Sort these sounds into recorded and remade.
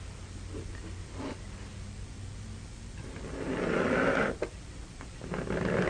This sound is recorded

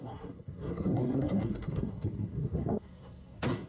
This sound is remade